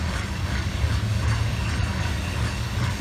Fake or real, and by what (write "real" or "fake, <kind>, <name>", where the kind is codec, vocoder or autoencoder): fake, codec, DAC